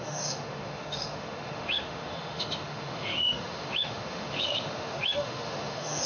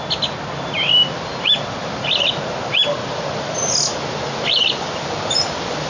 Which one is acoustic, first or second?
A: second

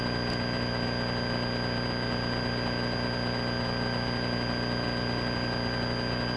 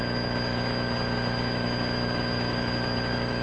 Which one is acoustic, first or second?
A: first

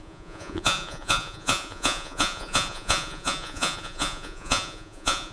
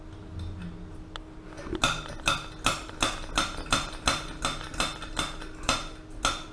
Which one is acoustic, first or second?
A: second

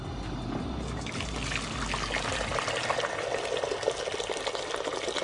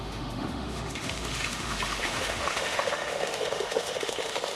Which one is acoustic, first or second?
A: first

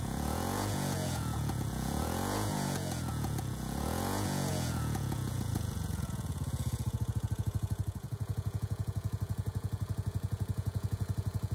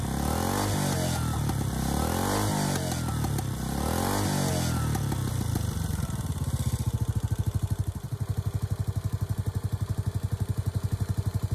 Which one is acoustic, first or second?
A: second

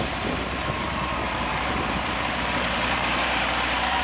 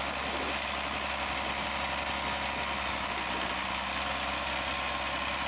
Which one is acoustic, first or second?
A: second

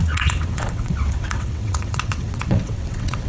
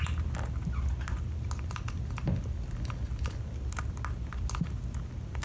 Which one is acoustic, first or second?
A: second